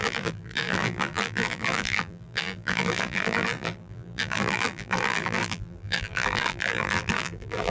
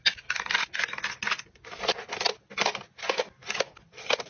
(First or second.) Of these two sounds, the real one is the second